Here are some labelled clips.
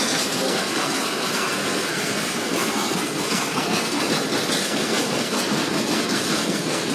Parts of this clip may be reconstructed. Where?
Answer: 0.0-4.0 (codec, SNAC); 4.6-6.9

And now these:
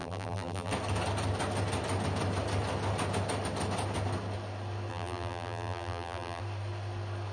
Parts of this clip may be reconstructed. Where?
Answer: 0.0-0.7 (vocoder, BigVGAN v2); 4.9-6.4

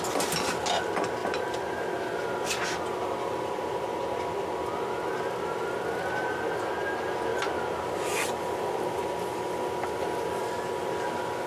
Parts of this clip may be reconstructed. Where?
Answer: none

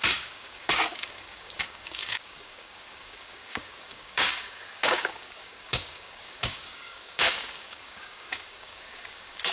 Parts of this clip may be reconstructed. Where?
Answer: 0.0-9.5 (codec, DAC)

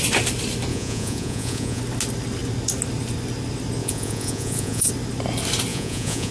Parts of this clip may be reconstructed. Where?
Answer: 0.7-1.8 (vocoder, Vocos); 3.8-4.9; 5.7-6.3